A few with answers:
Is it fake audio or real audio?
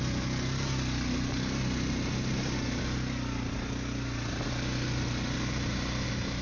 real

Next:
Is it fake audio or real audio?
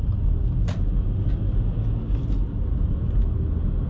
real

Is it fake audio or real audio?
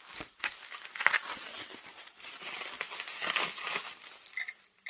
real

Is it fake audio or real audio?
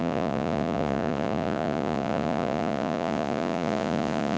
fake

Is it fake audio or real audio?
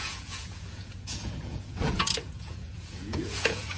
fake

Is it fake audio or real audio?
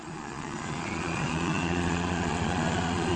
fake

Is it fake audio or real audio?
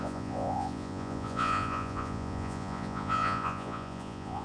fake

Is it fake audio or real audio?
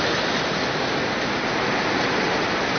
real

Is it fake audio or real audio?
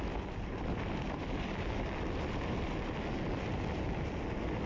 real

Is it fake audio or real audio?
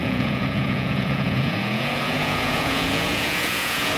fake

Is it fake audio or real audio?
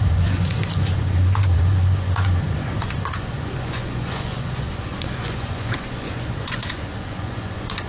fake